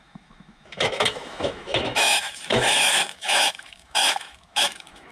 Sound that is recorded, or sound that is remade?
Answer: remade